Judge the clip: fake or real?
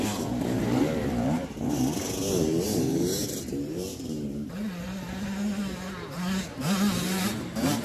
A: fake